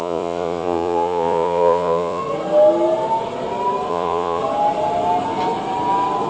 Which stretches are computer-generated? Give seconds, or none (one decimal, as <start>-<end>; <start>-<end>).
0.0-2.2; 3.9-4.4